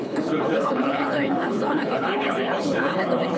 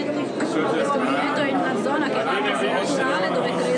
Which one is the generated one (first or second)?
first